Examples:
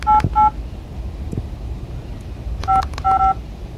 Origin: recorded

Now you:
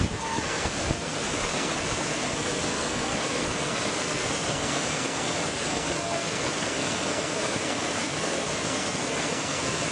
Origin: remade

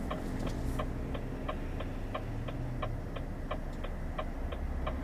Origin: recorded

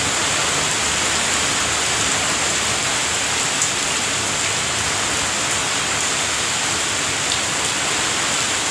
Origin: recorded